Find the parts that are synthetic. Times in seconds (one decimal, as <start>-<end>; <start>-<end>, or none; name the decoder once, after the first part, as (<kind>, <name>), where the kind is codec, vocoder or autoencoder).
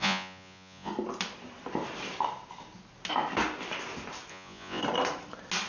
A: 0.0-0.9 (vocoder, Vocos); 4.3-4.8